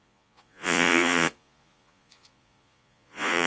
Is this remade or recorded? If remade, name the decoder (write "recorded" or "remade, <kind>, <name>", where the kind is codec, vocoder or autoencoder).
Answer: remade, vocoder, Vocos